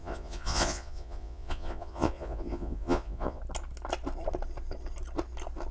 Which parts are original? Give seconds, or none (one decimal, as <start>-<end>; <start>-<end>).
3.4-5.7